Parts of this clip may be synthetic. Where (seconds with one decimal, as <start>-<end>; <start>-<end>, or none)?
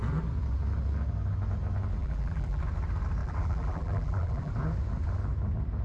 2.0-2.6; 3.2-4.5